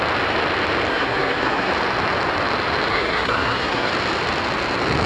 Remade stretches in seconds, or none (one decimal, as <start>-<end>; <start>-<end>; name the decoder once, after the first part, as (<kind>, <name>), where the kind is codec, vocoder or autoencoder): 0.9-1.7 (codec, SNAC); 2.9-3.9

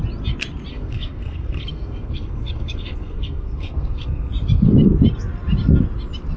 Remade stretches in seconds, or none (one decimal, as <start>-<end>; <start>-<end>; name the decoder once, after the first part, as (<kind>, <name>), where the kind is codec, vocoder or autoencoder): 0.7-4.3 (codec, SNAC)

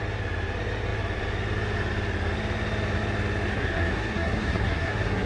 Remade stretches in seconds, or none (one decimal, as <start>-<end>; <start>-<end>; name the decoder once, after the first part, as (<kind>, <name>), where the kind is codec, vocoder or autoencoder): 3.5-5.3 (codec, SNAC)

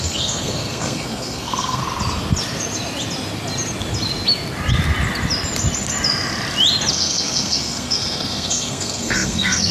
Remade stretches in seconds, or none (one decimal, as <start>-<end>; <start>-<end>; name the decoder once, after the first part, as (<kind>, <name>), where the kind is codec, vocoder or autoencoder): 0.0-1.8 (codec, SNAC); 6.9-9.7

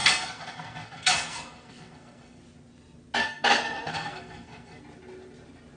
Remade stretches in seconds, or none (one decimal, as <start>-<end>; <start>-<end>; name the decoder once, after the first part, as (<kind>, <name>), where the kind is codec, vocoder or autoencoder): 0.0-2.4 (codec, SNAC); 3.2-4.8

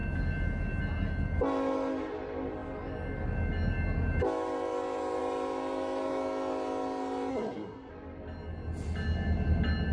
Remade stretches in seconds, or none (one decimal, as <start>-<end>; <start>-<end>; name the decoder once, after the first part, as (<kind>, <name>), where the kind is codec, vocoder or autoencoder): 7.3-7.9 (codec, SNAC)

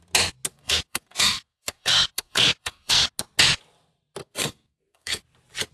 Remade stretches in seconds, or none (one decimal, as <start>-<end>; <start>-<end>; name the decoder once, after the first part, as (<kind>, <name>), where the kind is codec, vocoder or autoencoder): 0.5-3.1 (codec, SNAC); 4.2-5.2